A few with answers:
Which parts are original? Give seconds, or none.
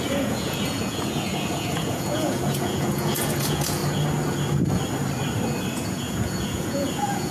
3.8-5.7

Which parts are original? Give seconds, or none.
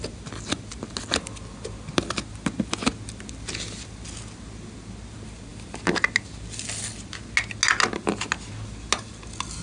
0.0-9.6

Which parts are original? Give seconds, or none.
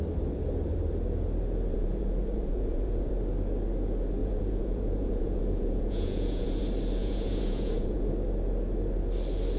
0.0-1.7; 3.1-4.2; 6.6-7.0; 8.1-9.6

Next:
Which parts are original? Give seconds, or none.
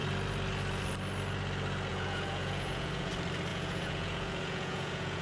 0.0-1.9; 3.1-3.5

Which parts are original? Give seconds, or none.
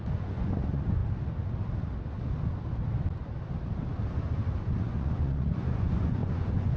1.0-4.8